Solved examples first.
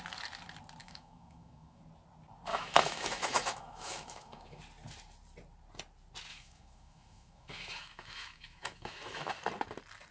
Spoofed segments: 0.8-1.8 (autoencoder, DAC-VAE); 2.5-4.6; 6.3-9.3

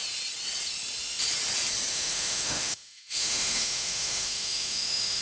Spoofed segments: 1.9-5.2 (autoencoder, DAC-VAE)